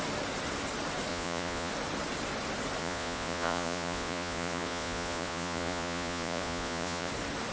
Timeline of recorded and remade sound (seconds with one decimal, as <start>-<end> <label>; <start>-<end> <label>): 0.0-1.1 recorded; 1.1-1.7 remade; 1.7-2.8 recorded; 2.8-7.1 remade; 7.1-7.5 recorded